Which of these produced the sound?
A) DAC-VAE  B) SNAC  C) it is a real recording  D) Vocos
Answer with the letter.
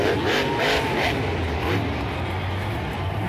C